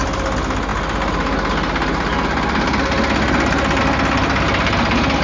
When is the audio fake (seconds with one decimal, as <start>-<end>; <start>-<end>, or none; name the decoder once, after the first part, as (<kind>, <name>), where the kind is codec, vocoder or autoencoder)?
none